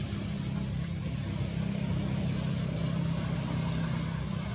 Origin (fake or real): real